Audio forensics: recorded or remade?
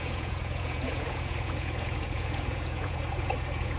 remade